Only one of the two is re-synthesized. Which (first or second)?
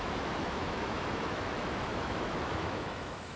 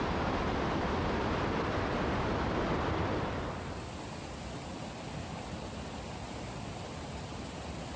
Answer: first